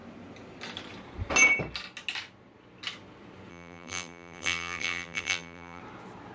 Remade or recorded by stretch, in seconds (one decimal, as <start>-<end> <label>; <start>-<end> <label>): 0.0-3.5 recorded; 3.5-5.8 remade; 5.8-6.3 recorded